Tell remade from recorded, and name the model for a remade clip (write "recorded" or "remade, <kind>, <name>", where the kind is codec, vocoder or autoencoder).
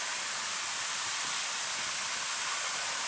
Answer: recorded